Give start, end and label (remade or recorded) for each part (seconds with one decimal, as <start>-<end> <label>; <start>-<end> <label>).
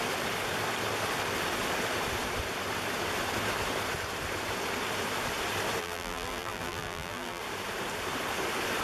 0.0-5.8 recorded; 5.8-7.4 remade; 7.4-8.8 recorded